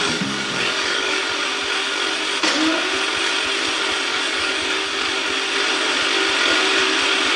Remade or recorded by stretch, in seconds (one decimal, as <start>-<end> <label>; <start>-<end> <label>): 0.0-1.2 remade; 1.2-4.1 recorded; 4.1-5.1 remade; 5.1-7.4 recorded